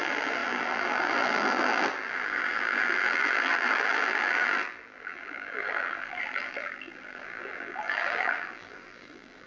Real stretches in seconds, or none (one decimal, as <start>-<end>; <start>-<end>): none